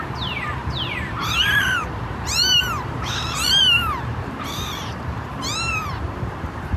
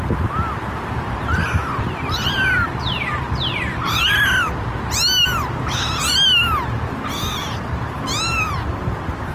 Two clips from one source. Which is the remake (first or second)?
first